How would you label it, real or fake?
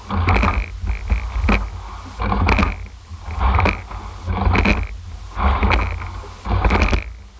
real